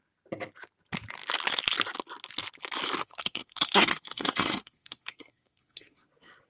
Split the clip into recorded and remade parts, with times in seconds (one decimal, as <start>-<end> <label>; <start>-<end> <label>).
0.0-3.0 recorded; 3.0-6.1 remade; 6.1-6.5 recorded